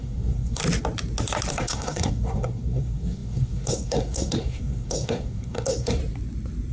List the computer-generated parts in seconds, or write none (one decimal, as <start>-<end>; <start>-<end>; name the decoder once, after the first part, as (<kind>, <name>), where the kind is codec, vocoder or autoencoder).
0.0-0.6 (codec, SNAC); 1.5-6.0